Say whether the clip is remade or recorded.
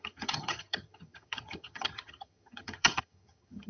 remade